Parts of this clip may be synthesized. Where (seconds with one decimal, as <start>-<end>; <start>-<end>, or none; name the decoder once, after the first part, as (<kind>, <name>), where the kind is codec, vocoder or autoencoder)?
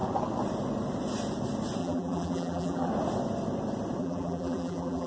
1.8-2.9 (vocoder, BigVGAN v2); 4.0-5.1